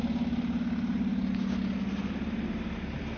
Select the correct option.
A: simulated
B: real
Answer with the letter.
B